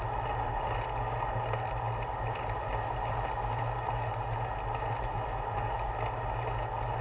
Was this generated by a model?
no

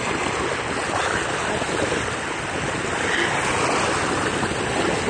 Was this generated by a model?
no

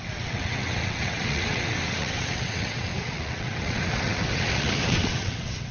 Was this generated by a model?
yes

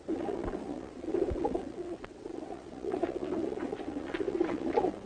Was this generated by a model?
yes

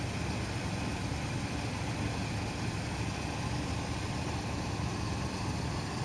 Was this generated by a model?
no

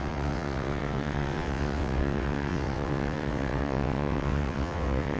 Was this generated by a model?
yes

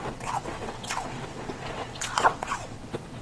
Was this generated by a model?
yes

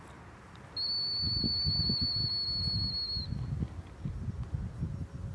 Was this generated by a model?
no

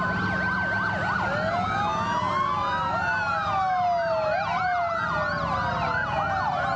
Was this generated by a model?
no